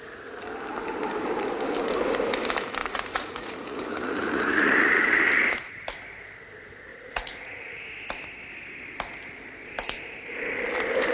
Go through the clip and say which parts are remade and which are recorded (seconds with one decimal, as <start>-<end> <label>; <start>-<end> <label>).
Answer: 0.0-2.8 recorded; 2.8-5.8 remade; 5.8-6.9 recorded; 6.9-7.8 remade; 7.8-11.1 recorded